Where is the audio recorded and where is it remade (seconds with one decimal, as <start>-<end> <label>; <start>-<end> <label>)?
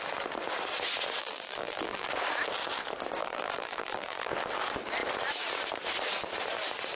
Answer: 0.0-1.2 recorded; 1.2-2.1 remade; 2.1-3.2 recorded; 3.2-4.3 remade; 4.3-7.0 recorded